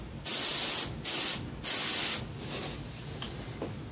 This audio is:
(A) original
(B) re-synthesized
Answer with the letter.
A